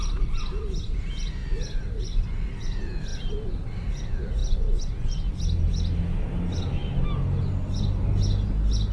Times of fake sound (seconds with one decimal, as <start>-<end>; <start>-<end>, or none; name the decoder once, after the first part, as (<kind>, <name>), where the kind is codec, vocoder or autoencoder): none

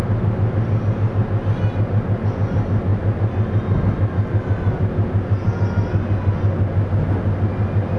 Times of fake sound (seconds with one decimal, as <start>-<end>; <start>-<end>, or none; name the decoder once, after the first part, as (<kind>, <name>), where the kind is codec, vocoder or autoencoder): none

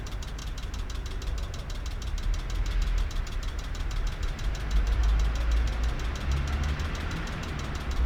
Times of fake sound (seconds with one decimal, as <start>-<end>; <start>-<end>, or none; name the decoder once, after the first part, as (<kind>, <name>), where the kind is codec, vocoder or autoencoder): 0.0-0.4 (vocoder, BigVGAN v2); 3.0-5.0; 6.9-8.1

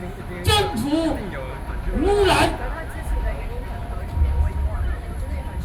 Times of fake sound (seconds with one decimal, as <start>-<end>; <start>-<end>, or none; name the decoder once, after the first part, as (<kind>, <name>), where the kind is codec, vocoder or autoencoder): 2.9-5.6 (vocoder, BigVGAN v2)

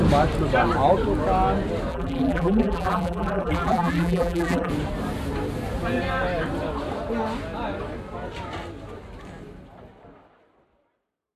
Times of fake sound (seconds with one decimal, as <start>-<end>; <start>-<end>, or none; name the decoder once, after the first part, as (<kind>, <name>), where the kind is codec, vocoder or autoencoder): 1.9-4.7 (vocoder, BigVGAN v2)